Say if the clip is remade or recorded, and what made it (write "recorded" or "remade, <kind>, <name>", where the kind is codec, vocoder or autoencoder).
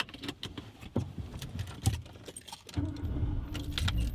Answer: recorded